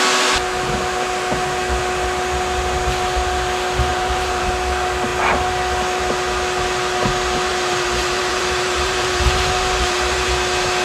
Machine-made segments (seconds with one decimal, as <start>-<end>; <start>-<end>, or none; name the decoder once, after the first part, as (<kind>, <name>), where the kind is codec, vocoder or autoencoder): 3.9-4.5 (vocoder, BigVGAN v2); 7.5-10.3